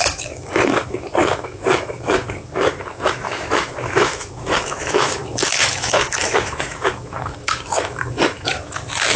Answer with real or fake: fake